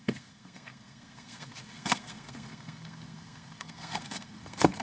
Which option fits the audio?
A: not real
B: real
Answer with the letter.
A